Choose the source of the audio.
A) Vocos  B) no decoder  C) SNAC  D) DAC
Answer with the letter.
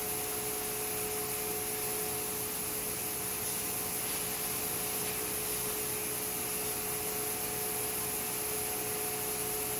B